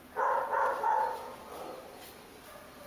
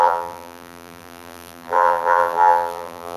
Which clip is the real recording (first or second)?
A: first